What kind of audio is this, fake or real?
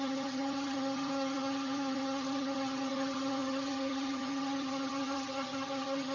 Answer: fake